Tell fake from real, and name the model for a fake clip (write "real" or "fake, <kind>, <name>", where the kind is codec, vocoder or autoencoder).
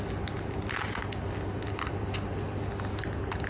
real